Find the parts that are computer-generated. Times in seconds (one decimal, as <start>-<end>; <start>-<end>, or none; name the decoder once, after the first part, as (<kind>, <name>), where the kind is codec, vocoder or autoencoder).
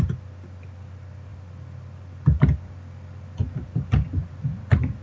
none